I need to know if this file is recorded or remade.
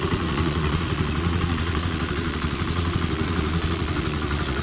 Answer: remade